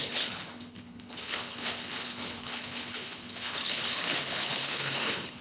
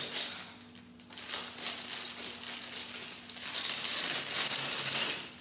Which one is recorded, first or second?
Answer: second